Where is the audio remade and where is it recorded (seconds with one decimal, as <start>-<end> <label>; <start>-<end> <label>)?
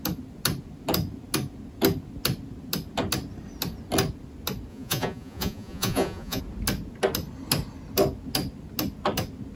0.0-4.7 recorded; 4.7-6.4 remade; 6.4-9.6 recorded